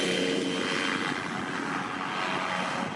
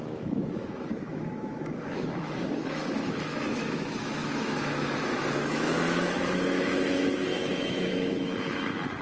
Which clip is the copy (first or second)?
second